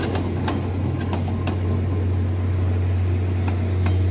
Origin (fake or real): real